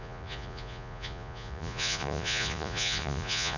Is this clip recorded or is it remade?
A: remade